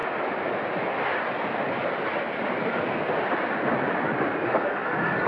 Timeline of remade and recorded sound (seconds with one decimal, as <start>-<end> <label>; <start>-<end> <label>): 0.0-4.3 recorded; 4.3-5.3 remade